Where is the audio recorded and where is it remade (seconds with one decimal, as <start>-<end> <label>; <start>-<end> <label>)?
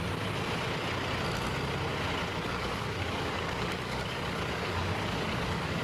0.0-2.3 recorded; 2.3-5.8 remade